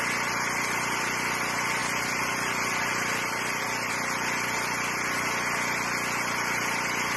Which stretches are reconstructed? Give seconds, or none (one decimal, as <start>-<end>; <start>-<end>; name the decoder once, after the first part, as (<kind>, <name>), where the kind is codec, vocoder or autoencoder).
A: none